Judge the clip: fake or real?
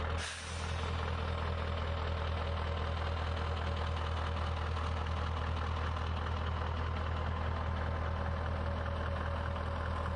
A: real